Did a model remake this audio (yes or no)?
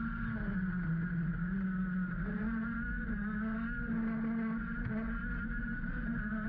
no